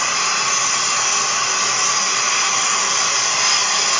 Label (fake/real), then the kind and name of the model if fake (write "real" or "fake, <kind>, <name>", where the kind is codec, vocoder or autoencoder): real